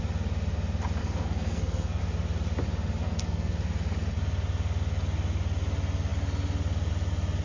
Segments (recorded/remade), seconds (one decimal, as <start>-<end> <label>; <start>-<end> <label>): 0.0-1.0 recorded; 1.0-2.0 remade; 2.0-3.0 recorded; 3.0-3.5 remade; 3.5-7.4 recorded